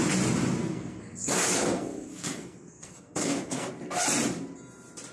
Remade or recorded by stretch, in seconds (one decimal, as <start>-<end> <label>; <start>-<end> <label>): 0.0-0.6 recorded; 0.6-3.7 remade; 3.7-5.1 recorded